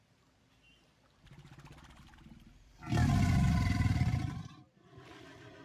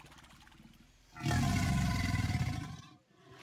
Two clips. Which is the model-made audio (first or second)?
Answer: first